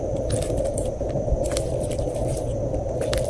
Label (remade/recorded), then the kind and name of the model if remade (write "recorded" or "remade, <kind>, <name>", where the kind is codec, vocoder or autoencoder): remade, vocoder, BigVGAN v2